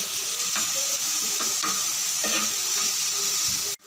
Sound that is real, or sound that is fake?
real